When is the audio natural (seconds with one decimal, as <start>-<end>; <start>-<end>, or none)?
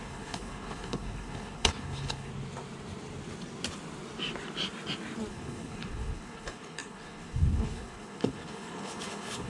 2.3-5.3